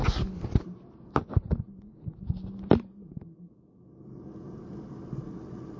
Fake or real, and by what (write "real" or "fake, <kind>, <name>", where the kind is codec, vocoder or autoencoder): real